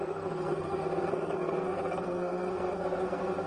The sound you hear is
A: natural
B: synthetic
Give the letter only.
B